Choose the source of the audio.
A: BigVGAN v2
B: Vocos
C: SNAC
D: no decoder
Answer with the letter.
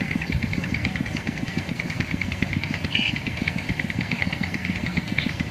C